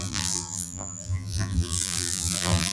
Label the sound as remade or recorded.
remade